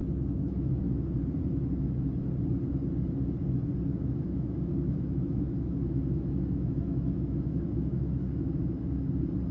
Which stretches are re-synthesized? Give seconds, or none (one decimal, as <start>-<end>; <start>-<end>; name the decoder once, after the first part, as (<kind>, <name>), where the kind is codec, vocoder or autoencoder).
0.0-1.2 (autoencoder, DAC-VAE); 3.9-9.0